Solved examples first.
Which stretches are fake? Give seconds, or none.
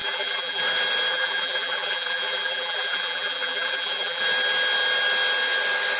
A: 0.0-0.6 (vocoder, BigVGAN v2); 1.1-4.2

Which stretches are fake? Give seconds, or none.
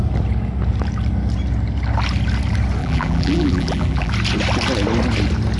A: 2.8-4.1 (vocoder, BigVGAN v2)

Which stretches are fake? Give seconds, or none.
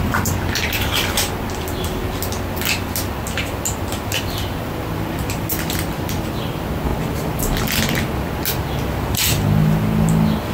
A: none